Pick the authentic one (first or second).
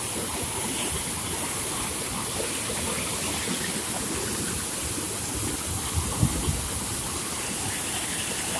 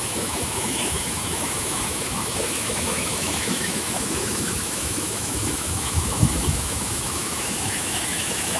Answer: first